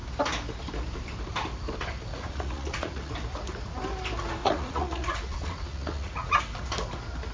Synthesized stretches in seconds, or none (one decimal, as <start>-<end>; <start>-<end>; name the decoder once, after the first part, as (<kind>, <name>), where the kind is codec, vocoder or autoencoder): 2.1-3.1 (vocoder, Vocos); 4.4-6.4